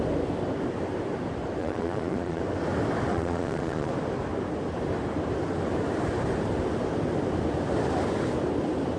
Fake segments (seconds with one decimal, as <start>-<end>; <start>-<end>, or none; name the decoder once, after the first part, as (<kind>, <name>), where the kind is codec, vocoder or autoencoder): 1.6-2.4 (vocoder, Vocos); 3.1-3.9